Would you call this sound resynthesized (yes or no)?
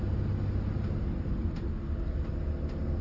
no